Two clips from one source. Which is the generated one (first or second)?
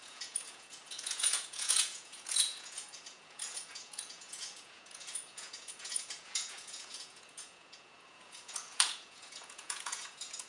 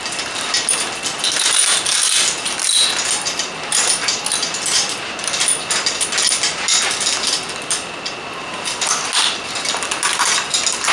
first